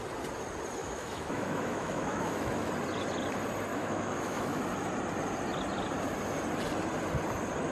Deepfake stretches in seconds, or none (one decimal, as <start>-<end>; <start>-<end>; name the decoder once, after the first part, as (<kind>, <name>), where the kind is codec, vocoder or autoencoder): 0.8-2.7 (autoencoder, DAC-VAE); 3.7-4.6